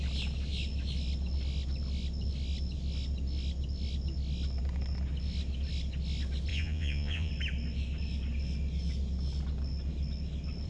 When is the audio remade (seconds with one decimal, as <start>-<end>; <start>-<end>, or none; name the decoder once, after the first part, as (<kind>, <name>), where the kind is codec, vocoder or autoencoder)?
6.5-7.3 (vocoder, Vocos)